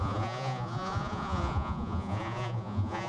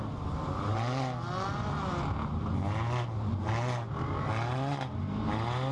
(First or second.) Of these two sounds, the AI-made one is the first